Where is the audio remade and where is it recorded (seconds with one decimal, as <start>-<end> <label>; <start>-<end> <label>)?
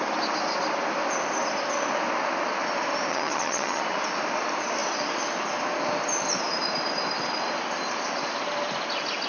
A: 0.0-3.1 recorded; 3.1-3.8 remade; 3.8-9.3 recorded